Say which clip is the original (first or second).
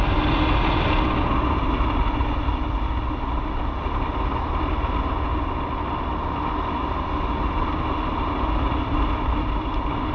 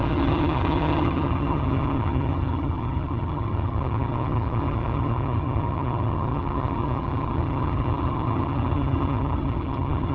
first